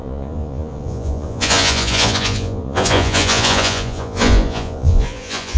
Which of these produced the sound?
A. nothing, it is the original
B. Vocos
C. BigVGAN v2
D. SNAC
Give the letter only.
B